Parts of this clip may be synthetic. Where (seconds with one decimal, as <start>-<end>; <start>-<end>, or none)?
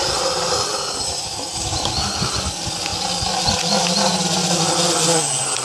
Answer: none